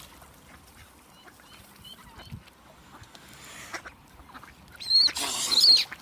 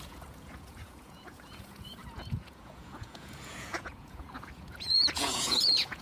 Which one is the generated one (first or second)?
second